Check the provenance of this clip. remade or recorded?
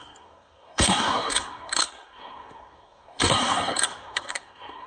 remade